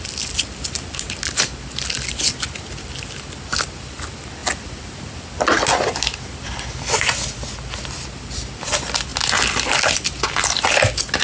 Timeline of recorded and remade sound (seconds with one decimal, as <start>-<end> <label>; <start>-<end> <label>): 0.0-11.2 recorded